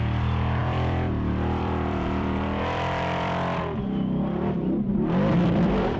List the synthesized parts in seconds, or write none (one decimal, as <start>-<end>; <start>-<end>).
0.6-4.2